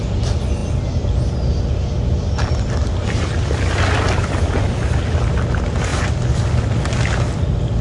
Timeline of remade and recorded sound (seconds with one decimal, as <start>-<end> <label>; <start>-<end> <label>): 0.0-7.8 recorded

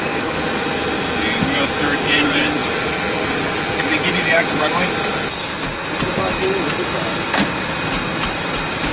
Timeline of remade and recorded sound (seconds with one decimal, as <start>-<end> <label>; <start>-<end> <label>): 0.0-2.6 recorded; 2.6-4.5 remade; 4.5-8.9 recorded

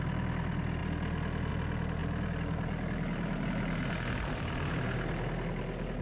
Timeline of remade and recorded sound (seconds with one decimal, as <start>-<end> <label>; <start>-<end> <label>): 0.0-2.0 recorded; 2.0-4.7 remade; 4.7-6.0 recorded